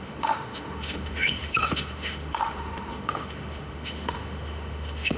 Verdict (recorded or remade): remade